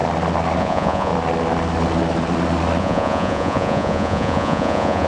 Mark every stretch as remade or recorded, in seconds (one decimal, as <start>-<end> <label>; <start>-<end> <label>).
0.0-0.6 recorded; 0.6-1.1 remade; 1.1-2.8 recorded; 2.8-5.1 remade